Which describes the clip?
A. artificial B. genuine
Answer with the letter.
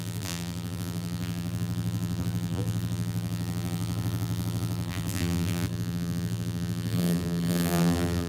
A